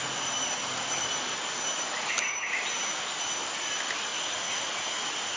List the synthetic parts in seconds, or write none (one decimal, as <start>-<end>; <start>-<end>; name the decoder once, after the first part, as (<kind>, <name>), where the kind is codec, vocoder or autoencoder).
4.1-5.4 (vocoder, Vocos)